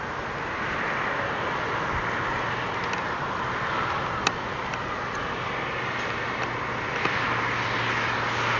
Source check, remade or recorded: recorded